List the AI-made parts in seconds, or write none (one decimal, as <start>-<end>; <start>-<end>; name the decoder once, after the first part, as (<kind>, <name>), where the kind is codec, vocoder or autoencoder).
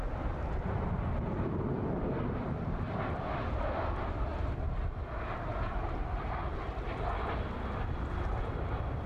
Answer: none